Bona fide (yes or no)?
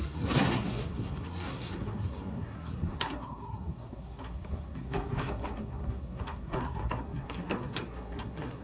no